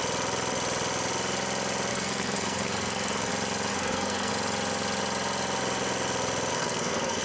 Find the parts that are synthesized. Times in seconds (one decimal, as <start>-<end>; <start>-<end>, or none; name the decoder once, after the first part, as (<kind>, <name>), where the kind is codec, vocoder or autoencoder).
1.9-3.3 (codec, SNAC); 3.7-4.3; 6.5-7.2